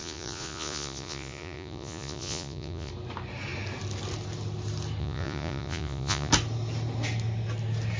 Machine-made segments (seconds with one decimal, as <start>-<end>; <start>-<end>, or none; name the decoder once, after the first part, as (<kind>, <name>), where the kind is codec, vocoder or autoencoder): 0.0-2.9 (vocoder, Vocos); 5.0-6.3